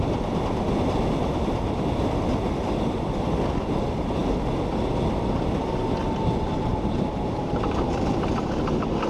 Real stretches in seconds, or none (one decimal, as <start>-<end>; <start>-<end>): 0.0-6.7; 8.4-9.1